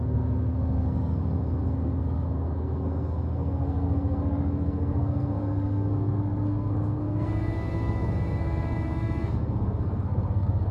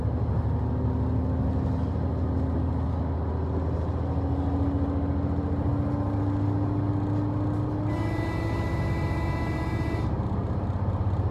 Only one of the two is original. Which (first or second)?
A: second